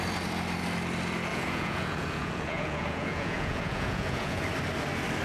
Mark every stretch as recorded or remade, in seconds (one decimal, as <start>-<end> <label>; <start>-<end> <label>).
0.0-1.3 recorded; 1.3-4.4 remade; 4.4-5.2 recorded